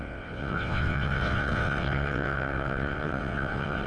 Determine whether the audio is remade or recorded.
remade